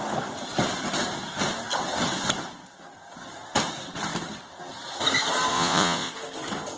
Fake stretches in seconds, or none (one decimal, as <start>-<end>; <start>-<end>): 5.5-6.1